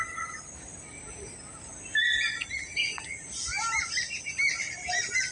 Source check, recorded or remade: recorded